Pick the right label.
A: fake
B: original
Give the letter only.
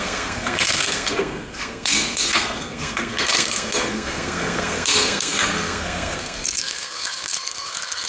A